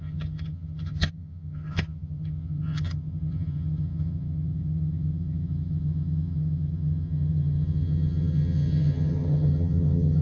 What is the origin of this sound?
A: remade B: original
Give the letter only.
A